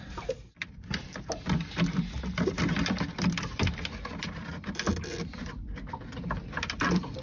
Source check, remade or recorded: recorded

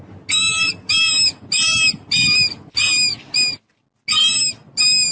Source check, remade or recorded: recorded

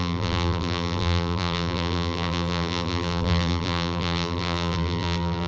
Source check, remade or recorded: remade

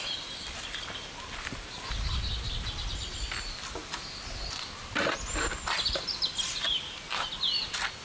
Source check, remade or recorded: recorded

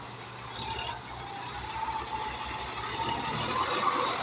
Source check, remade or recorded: recorded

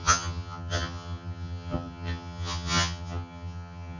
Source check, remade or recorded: remade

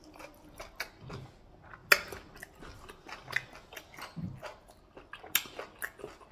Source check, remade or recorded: recorded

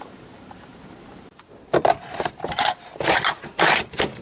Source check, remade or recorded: remade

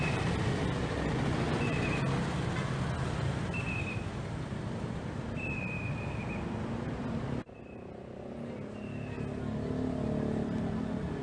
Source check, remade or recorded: recorded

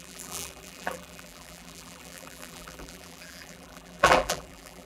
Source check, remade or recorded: remade